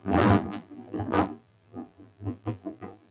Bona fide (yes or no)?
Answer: no